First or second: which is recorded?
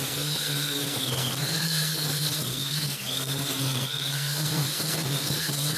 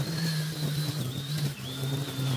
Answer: second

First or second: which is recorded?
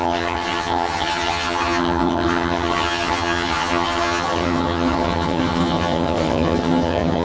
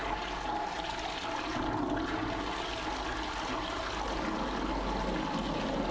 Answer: second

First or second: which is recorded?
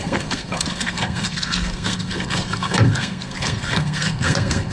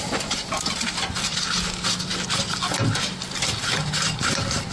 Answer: second